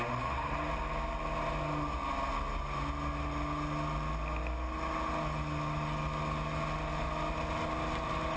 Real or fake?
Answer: real